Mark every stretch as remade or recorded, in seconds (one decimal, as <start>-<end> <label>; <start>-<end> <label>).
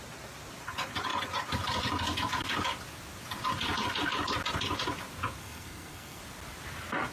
0.0-5.4 recorded; 5.4-6.2 remade; 6.2-7.1 recorded